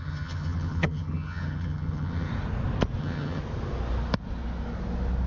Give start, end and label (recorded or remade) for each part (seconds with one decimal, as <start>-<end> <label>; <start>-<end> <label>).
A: 0.0-2.3 remade; 2.3-3.0 recorded; 3.0-3.4 remade; 3.4-5.3 recorded